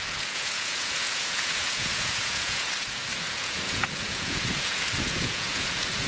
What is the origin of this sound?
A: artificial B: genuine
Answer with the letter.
A